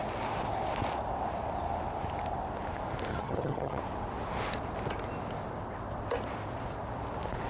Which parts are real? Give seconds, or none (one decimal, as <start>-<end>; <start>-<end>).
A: 0.0-3.1; 3.8-7.5